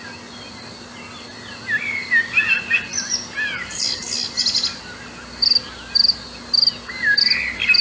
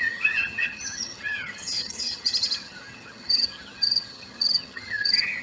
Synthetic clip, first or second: second